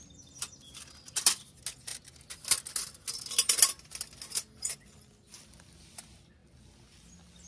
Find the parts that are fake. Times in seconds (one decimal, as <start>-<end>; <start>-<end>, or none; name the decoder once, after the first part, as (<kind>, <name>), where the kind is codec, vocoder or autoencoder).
none